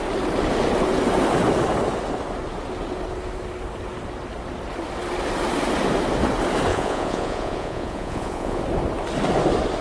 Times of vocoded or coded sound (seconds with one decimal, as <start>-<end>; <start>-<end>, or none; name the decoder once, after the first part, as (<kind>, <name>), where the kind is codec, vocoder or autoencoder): 6.7-8.6 (vocoder, Vocos)

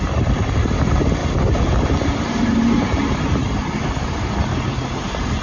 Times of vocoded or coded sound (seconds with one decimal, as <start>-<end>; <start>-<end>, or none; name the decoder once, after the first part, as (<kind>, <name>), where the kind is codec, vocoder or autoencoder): 0.0-1.2 (vocoder, BigVGAN v2); 1.8-3.4; 4.0-5.4